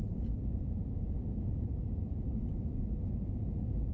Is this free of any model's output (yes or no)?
no